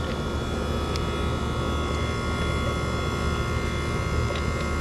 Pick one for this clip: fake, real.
real